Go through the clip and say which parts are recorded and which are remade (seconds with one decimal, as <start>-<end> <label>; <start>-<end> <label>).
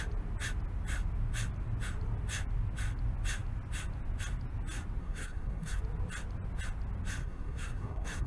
0.0-5.0 recorded; 5.0-5.8 remade; 5.8-7.2 recorded; 7.2-8.3 remade